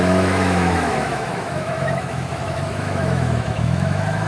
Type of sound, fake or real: fake